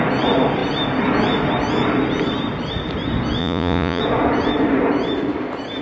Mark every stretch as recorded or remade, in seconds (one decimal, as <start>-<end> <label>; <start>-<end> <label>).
0.0-3.4 recorded; 3.4-4.0 remade; 4.0-5.8 recorded